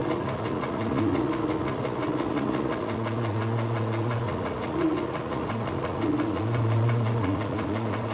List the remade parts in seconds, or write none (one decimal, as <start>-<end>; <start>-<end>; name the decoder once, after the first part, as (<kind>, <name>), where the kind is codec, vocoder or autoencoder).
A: 0.0-8.1 (vocoder, Vocos)